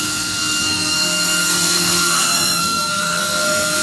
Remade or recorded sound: remade